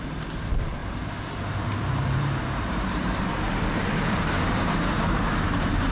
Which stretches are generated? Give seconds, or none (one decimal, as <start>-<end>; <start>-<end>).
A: 0.0-0.8; 1.8-3.1; 3.8-5.9